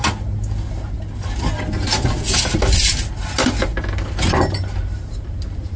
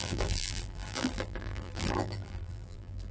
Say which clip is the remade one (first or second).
second